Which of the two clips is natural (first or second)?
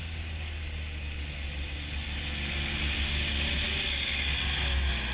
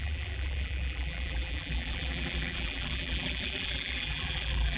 first